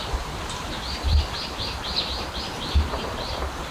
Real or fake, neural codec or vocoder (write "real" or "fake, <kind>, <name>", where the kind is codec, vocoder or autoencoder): real